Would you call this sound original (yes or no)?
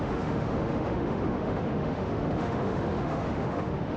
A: no